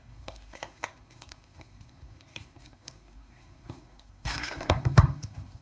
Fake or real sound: fake